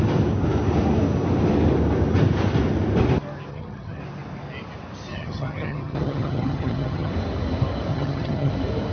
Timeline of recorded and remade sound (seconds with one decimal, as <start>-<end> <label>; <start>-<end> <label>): 0.0-3.5 recorded; 3.5-4.0 remade; 4.0-5.1 recorded; 5.1-7.1 remade; 7.1-7.9 recorded; 7.9-8.5 remade; 8.5-8.9 recorded